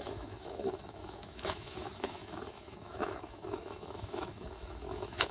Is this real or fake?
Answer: fake